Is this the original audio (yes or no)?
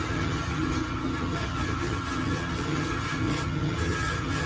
no